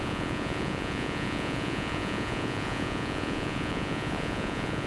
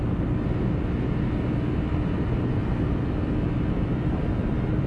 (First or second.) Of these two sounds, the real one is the second